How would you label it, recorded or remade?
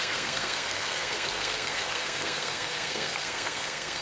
remade